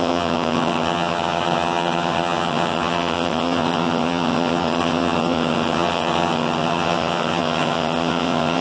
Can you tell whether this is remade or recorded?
remade